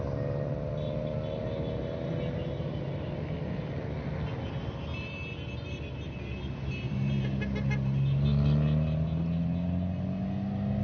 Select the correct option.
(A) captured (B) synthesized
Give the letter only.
A